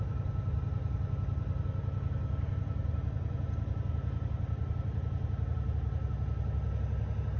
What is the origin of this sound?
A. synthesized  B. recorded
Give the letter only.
B